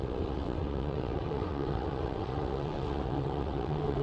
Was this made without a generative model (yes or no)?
no